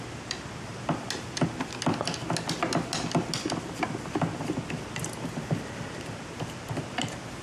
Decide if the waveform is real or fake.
real